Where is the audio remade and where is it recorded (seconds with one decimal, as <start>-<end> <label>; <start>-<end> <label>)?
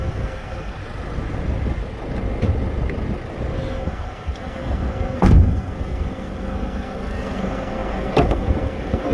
0.0-0.8 remade; 0.8-3.7 recorded; 3.7-9.1 remade